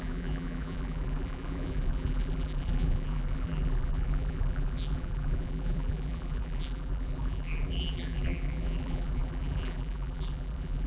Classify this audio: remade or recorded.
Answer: remade